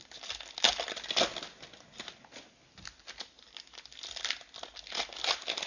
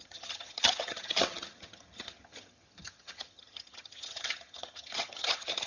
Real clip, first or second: first